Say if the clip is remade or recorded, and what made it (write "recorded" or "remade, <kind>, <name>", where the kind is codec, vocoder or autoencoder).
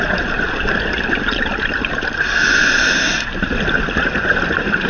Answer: recorded